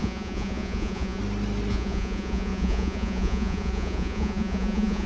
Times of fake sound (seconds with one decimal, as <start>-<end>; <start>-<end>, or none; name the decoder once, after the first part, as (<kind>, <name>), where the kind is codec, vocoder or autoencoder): 0.0-1.2 (vocoder, Vocos); 1.7-5.1